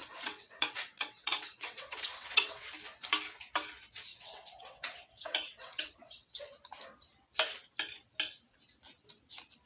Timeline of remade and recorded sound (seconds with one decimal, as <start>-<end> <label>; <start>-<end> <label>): 0.0-2.7 remade; 2.7-4.1 recorded; 4.1-6.4 remade; 6.4-9.7 recorded